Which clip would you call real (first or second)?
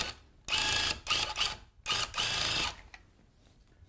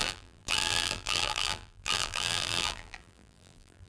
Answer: first